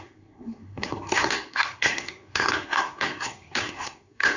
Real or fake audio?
fake